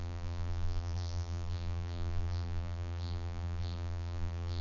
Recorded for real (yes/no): no